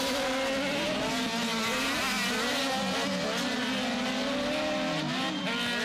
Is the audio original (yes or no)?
yes